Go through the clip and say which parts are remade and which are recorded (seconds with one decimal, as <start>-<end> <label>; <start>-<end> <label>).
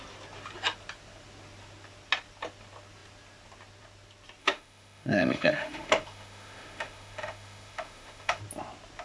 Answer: 0.0-4.4 recorded; 4.4-8.4 remade; 8.4-9.0 recorded